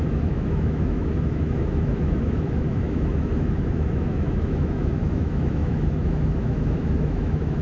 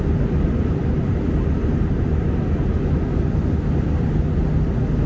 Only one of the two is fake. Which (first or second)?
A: first